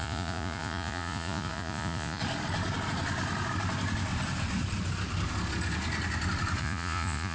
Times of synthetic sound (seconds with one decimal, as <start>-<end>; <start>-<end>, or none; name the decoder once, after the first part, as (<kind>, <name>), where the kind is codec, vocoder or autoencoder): 0.0-2.2 (vocoder, Vocos); 6.6-7.3